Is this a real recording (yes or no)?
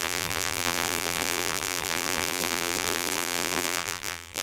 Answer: no